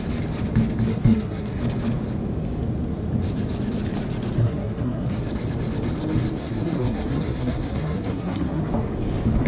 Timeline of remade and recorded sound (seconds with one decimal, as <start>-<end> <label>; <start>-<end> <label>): 0.0-0.9 recorded; 0.9-1.6 remade; 1.6-4.4 recorded; 4.4-5.2 remade; 5.2-6.4 recorded; 6.4-8.6 remade; 8.6-9.5 recorded